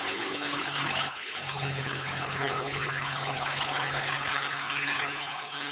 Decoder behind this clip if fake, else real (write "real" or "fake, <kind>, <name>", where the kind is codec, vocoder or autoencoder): fake, codec, HILCodec